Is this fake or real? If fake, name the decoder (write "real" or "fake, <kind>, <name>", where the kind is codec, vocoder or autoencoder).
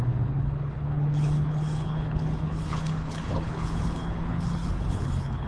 fake, codec, HILCodec